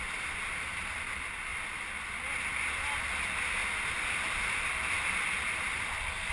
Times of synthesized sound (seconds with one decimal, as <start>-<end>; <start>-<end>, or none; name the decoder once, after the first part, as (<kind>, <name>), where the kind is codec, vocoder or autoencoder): none